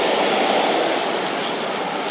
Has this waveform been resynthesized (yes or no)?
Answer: no